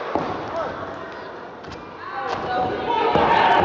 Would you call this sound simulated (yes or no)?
no